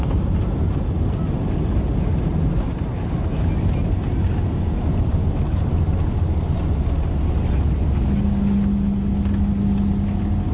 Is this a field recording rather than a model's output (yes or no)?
yes